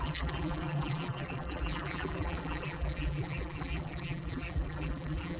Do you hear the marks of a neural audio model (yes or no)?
yes